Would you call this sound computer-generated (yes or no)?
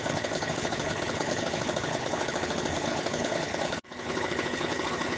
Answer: yes